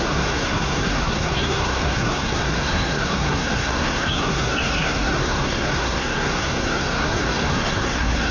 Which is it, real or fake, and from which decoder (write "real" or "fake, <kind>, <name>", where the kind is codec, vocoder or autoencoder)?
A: fake, codec, SNAC